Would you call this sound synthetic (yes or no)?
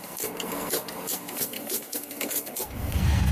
yes